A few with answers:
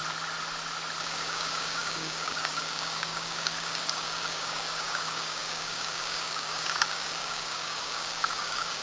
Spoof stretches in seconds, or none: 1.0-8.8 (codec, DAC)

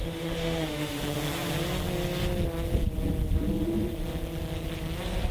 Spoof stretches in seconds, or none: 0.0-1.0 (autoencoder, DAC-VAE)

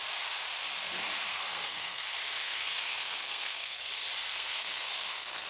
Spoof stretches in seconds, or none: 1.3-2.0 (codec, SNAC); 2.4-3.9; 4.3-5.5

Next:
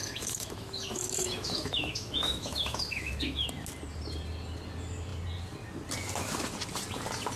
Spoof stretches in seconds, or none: 0.0-3.5 (autoencoder, DAC-VAE)

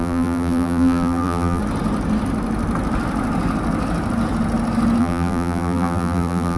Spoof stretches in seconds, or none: 0.0-1.6 (vocoder, BigVGAN v2); 5.0-6.6

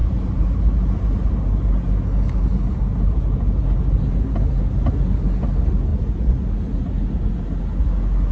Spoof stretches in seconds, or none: 0.0-1.3 (vocoder, BigVGAN v2)

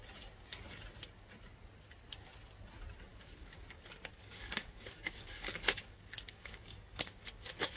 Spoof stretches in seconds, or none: 3.1-7.8 (codec, DAC)

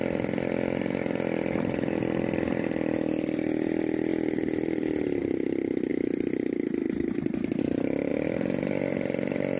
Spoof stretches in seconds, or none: 4.1-5.2 (vocoder, BigVGAN v2); 5.9-7.6; 8.1-9.6